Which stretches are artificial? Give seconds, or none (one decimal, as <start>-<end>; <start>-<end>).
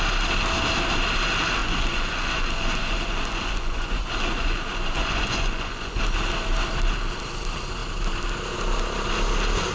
1.6-6.0